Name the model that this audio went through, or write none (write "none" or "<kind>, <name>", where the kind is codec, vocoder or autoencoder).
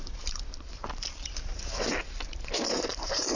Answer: none